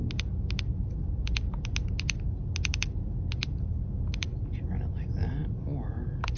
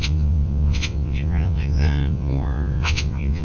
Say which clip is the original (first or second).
first